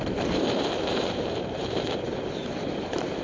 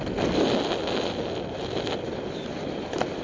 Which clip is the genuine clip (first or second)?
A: second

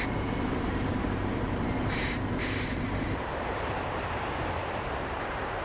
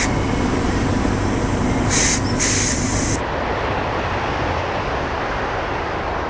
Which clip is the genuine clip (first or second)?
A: second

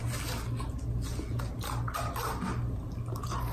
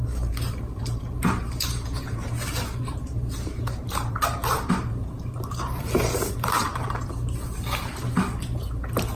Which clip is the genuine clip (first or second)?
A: first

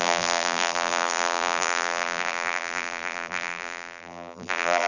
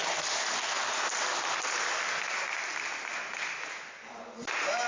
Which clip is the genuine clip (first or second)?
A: second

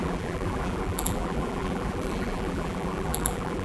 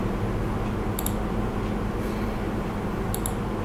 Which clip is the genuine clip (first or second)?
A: second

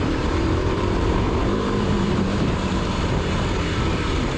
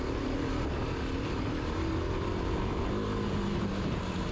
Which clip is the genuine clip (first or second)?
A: second